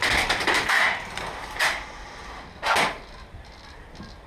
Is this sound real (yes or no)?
yes